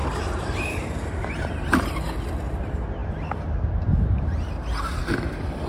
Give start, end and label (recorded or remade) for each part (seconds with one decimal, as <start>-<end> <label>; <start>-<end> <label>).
0.0-1.0 remade; 1.0-5.7 recorded